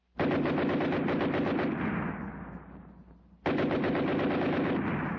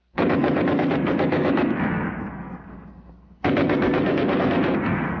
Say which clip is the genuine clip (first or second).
first